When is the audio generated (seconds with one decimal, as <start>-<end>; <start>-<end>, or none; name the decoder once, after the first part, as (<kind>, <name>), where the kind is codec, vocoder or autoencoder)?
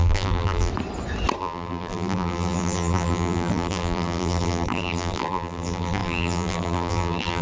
0.0-0.7 (vocoder, BigVGAN v2); 1.4-7.4